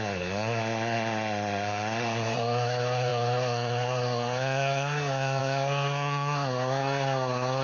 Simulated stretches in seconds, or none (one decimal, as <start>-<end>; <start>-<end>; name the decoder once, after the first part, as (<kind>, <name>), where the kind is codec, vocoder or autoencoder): 0.0-7.6 (codec, SNAC)